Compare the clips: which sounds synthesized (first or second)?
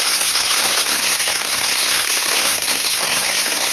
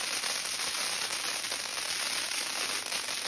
first